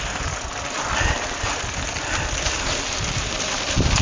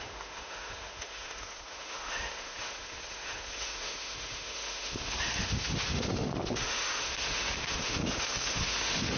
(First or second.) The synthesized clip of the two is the second